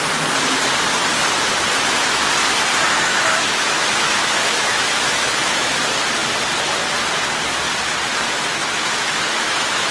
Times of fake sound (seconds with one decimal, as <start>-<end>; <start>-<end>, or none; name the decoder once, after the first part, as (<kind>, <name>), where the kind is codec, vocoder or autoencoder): 3.1-5.8 (autoencoder, DAC-VAE); 8.6-9.9